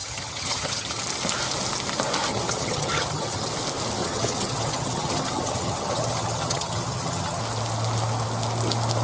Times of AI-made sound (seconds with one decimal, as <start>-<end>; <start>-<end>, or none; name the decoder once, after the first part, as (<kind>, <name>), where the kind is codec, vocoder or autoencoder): 0.0-1.0 (vocoder, HiFi-GAN); 2.3-3.5; 4.0-7.4